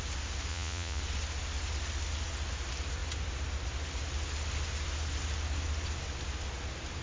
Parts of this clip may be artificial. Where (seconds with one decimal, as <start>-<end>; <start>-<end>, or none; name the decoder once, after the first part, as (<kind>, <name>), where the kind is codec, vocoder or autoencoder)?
0.5-1.0 (vocoder, Vocos)